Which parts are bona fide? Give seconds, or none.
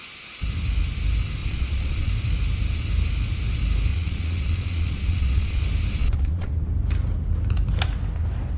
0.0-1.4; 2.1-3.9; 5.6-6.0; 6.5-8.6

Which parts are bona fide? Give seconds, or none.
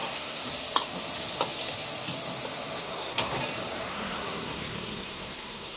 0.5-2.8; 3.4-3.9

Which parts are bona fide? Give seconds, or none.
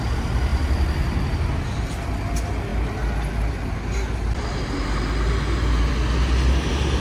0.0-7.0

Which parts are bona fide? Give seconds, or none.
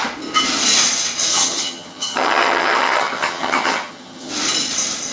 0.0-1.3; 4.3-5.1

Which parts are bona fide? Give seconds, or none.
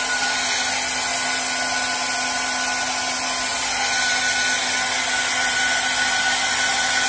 0.0-7.1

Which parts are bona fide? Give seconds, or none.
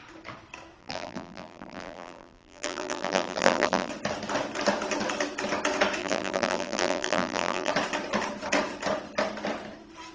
0.0-0.8; 3.9-6.0; 7.7-10.1